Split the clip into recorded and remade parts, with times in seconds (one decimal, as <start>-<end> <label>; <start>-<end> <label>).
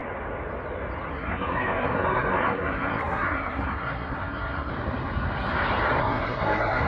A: 0.0-1.1 recorded; 1.1-4.7 remade; 4.7-6.0 recorded; 6.0-6.9 remade